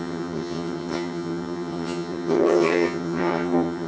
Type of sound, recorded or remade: remade